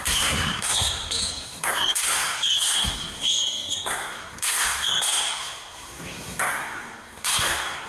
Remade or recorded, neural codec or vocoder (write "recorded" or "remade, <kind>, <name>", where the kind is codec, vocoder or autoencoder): remade, codec, SNAC